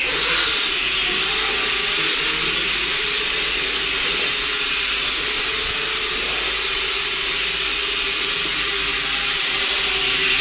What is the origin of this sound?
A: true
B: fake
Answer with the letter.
A